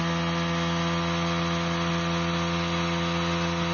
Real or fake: real